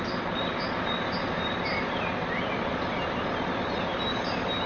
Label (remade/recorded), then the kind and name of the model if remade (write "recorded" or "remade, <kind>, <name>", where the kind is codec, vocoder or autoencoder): recorded